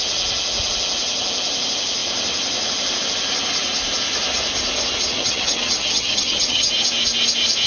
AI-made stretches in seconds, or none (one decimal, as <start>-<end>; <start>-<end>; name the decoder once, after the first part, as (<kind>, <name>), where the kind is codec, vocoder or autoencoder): 5.1-6.7 (vocoder, HiFi-GAN)